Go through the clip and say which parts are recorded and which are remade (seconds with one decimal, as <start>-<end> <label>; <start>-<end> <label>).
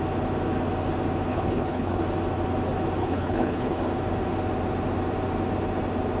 0.0-1.3 recorded; 1.3-2.0 remade; 2.0-3.0 recorded; 3.0-3.8 remade; 3.8-6.2 recorded